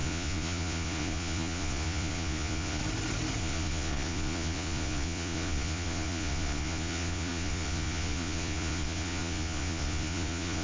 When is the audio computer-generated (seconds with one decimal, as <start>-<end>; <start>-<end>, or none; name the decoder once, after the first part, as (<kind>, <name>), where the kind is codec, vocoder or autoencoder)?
0.0-2.8 (vocoder, Vocos); 3.4-10.6